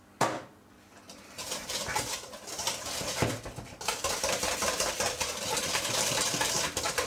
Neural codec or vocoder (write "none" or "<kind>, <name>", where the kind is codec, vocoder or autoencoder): none